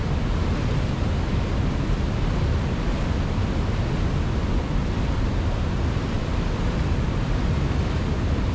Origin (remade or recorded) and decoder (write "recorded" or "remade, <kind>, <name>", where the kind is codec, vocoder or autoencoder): recorded